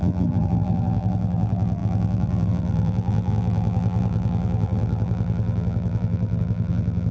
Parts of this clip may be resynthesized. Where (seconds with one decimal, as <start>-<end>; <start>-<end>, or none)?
0.0-7.1